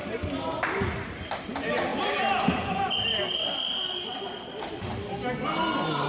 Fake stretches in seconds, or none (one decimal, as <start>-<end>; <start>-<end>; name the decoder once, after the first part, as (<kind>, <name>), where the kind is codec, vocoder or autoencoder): 0.0-1.5 (vocoder, BigVGAN v2); 1.9-5.3